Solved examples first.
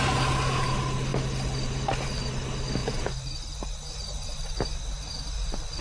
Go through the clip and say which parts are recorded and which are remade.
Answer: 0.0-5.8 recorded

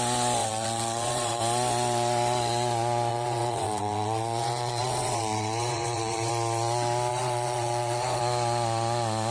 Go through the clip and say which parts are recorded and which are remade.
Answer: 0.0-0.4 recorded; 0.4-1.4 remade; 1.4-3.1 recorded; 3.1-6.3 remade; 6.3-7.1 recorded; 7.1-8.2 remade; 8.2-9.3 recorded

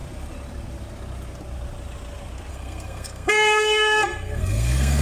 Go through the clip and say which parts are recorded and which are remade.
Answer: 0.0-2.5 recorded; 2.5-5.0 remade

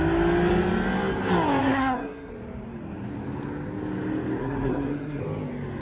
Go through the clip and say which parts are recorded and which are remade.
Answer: 0.0-1.6 recorded; 1.6-2.3 remade; 2.3-4.4 recorded; 4.4-5.2 remade; 5.2-5.8 recorded

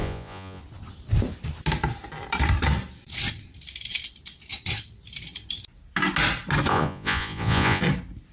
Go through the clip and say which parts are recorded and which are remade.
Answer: 0.0-0.6 remade; 0.6-6.7 recorded; 6.7-7.8 remade; 7.8-8.3 recorded

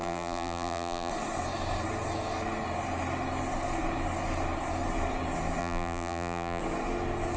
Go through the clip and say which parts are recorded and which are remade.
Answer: 0.0-1.1 remade; 1.1-5.6 recorded; 5.6-6.6 remade; 6.6-7.4 recorded